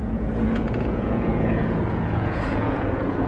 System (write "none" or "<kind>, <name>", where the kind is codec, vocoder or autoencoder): vocoder, Vocos